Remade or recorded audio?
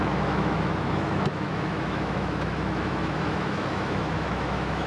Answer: remade